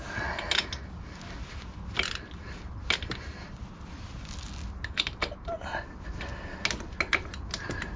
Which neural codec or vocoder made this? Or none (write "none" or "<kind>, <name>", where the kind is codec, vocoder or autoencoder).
none